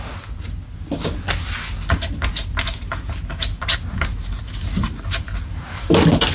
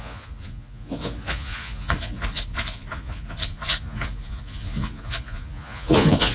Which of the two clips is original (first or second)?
first